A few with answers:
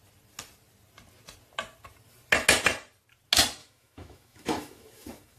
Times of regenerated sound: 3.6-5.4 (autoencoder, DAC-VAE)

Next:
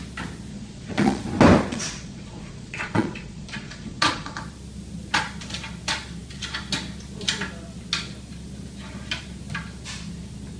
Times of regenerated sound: 0.5-1.2 (vocoder, Vocos); 1.7-4.4

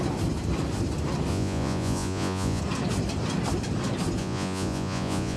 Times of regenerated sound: 1.3-2.6 (vocoder, Vocos); 4.2-5.4

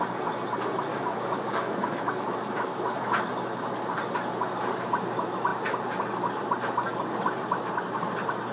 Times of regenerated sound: 0.9-2.0 (codec, DAC)

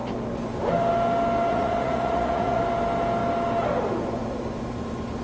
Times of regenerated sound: 1.5-2.6 (vocoder, Vocos)